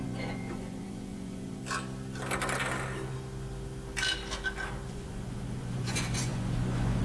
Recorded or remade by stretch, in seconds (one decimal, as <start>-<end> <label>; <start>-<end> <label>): 0.0-1.6 remade; 1.6-4.9 recorded; 4.9-7.0 remade